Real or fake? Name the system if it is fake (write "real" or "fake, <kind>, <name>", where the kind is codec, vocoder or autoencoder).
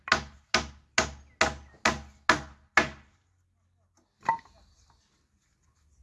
real